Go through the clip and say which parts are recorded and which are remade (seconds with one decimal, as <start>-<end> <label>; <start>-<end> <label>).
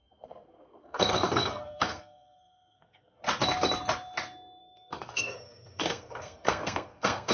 0.0-3.2 remade; 3.2-4.6 recorded; 4.6-7.3 remade